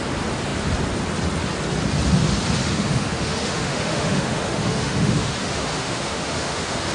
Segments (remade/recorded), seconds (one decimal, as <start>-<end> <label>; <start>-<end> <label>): 0.0-2.6 recorded; 2.6-6.9 remade